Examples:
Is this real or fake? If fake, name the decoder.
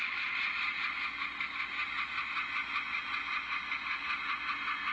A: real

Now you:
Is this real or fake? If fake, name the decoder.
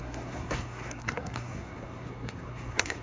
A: fake, codec, SNAC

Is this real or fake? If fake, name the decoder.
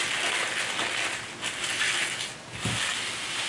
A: real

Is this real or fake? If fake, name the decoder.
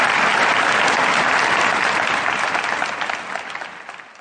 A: real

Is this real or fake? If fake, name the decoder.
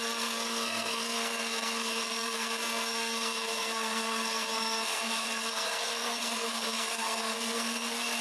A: fake, codec, SNAC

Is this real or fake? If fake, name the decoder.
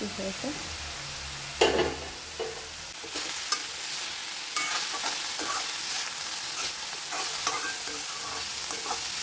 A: real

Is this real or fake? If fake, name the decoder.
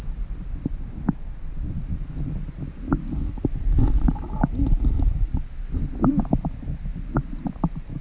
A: real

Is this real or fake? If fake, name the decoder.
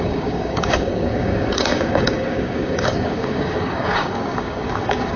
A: fake, codec, DAC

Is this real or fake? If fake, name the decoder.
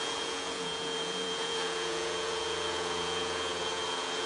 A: fake, vocoder, Vocos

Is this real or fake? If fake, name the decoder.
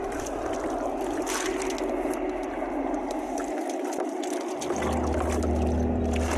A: real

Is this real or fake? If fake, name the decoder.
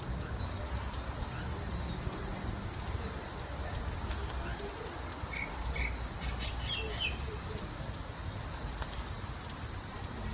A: real